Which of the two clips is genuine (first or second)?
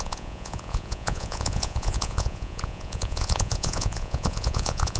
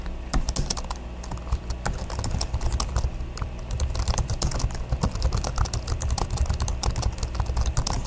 second